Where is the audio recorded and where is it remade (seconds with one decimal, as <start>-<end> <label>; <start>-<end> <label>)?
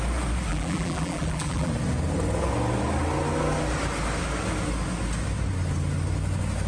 0.0-0.5 recorded; 0.5-1.7 remade; 1.7-6.7 recorded